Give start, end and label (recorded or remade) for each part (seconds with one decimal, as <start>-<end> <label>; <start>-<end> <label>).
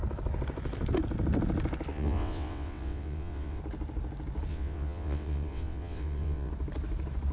0.0-1.9 recorded; 1.9-3.6 remade; 3.6-4.5 recorded; 4.5-6.5 remade; 6.5-7.3 recorded